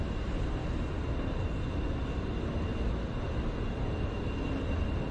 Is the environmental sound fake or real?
real